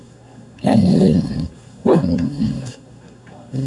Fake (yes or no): yes